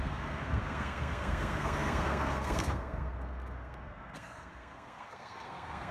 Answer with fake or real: fake